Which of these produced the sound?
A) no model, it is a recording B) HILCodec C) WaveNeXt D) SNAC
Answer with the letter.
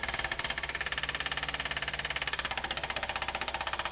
A